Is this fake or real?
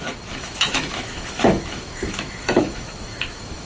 fake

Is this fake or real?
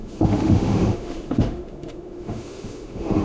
fake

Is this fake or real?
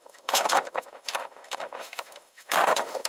fake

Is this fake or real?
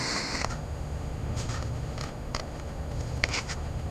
fake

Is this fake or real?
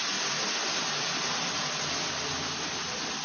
real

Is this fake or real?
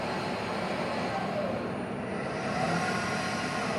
real